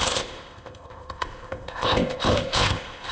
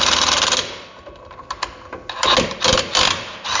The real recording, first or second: second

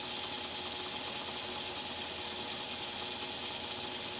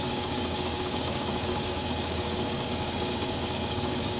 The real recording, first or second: first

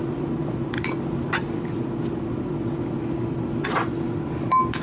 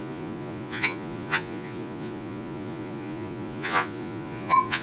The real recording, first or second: first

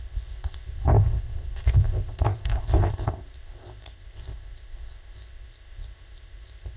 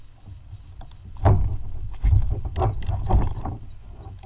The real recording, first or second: second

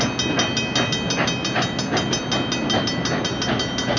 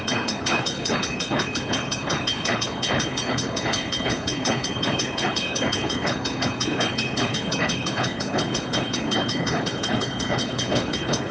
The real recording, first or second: first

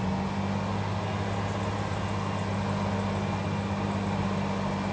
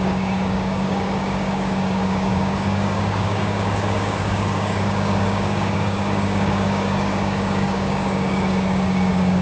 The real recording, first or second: first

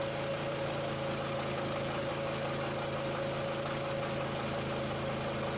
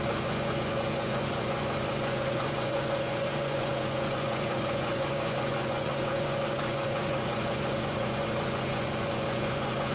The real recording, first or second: first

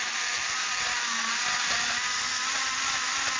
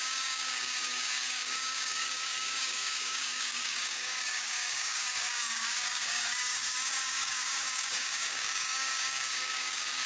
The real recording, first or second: first